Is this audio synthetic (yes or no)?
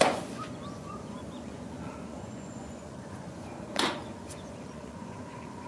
yes